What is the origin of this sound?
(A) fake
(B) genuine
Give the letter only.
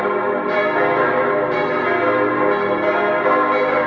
B